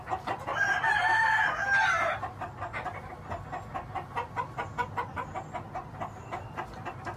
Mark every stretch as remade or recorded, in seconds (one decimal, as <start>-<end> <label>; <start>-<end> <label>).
0.0-7.2 recorded